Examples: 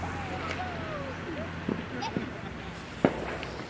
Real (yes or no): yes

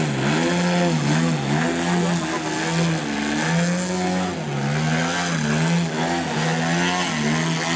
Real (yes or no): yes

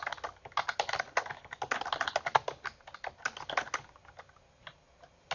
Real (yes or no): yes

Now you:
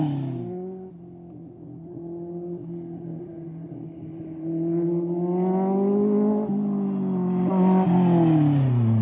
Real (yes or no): yes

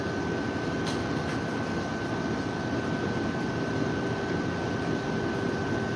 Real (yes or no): yes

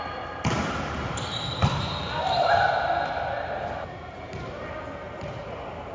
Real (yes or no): yes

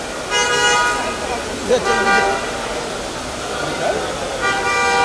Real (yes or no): yes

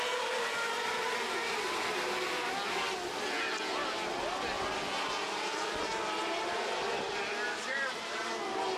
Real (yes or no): yes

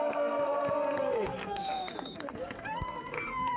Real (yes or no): no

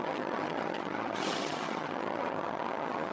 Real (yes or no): no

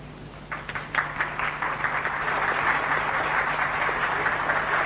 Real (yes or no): yes